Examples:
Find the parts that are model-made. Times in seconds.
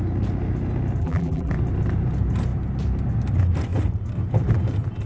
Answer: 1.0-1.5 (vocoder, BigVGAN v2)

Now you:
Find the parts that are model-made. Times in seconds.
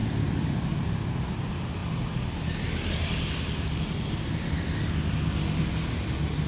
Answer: none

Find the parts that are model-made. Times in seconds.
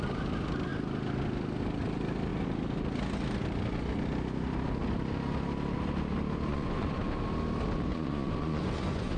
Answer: 6.5-7.0 (vocoder, Vocos); 7.9-9.2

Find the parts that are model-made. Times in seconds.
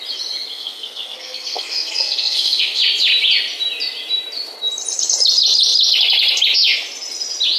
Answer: 0.5-2.8 (codec, SNAC)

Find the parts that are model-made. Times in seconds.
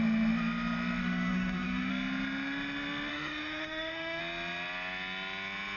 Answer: 1.0-1.9 (autoencoder, DAC-VAE); 3.1-4.2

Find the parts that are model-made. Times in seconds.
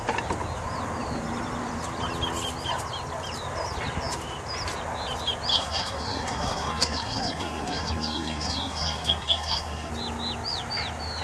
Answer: 5.5-9.9 (codec, SNAC)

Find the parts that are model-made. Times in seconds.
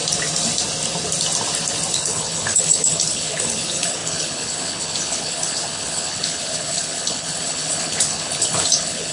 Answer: 1.9-9.1 (codec, HILCodec)